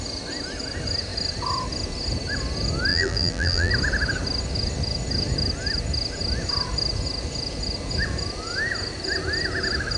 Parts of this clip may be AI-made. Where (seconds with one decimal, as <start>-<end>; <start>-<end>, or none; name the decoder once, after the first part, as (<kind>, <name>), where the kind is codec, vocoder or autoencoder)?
2.9-3.7 (vocoder, BigVGAN v2)